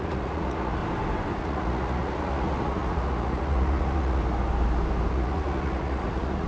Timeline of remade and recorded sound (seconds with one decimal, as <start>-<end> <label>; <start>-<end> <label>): 0.0-0.8 remade; 0.8-1.4 recorded; 1.4-4.2 remade; 4.2-5.1 recorded; 5.1-6.5 remade